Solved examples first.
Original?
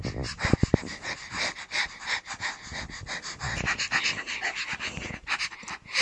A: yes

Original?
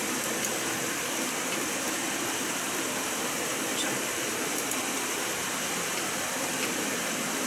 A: no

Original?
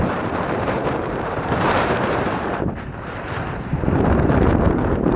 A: no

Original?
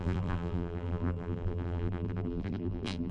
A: no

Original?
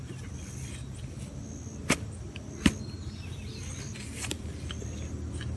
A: yes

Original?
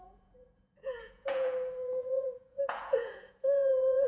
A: no